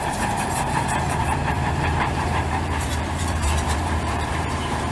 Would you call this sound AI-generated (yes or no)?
yes